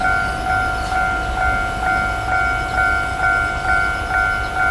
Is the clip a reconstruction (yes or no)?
no